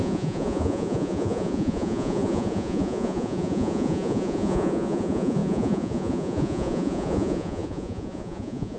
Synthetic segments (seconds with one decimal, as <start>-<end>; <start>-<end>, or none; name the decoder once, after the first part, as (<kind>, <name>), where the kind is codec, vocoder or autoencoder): 0.0-8.8 (vocoder, Vocos)